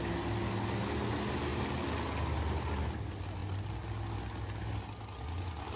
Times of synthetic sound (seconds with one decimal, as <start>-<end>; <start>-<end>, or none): none